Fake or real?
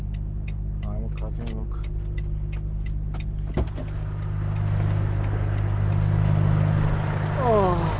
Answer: real